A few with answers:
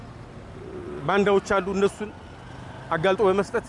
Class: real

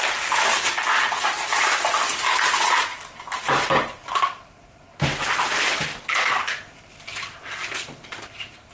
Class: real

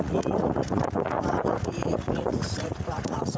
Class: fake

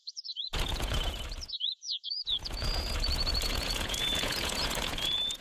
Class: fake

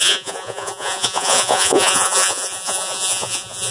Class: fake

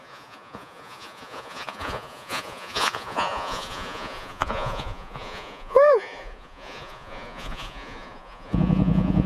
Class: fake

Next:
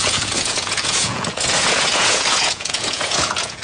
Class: fake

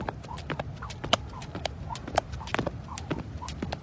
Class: real